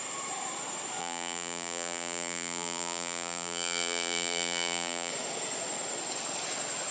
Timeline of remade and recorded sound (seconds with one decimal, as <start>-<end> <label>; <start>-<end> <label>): 0.0-1.0 recorded; 1.0-5.1 remade; 5.1-6.9 recorded